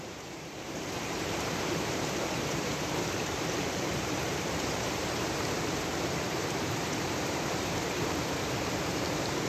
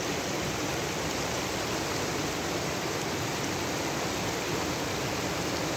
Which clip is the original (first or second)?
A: second